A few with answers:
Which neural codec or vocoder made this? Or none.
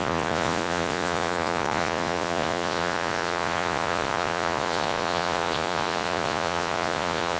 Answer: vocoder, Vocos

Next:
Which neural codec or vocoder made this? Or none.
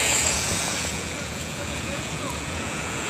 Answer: vocoder, Vocos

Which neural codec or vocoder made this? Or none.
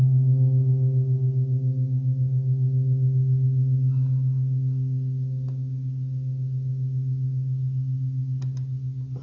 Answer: none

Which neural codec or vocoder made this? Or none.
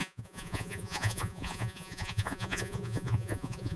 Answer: vocoder, Vocos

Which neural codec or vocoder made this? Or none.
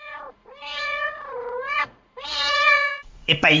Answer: vocoder, Vocos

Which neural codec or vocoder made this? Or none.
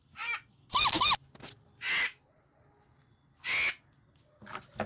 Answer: none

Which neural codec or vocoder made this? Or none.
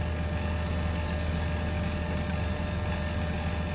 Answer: none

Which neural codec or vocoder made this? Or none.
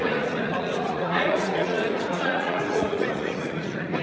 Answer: vocoder, Vocos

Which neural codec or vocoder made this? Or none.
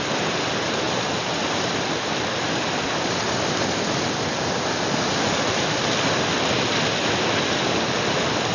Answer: none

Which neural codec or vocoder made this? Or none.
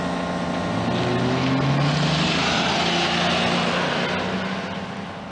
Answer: none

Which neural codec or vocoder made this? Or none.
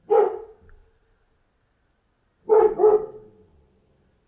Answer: none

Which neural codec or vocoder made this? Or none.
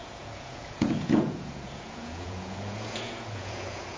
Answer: vocoder, Vocos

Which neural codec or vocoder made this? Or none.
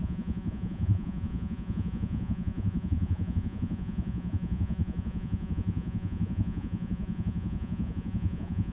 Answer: vocoder, Vocos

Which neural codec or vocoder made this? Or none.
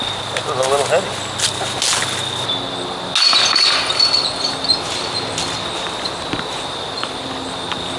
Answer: none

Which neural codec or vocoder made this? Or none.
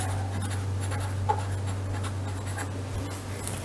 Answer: none